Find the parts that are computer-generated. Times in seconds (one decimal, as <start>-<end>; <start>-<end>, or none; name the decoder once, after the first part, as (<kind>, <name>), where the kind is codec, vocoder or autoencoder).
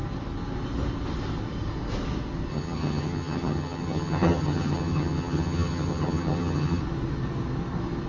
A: 2.5-6.8 (vocoder, HiFi-GAN)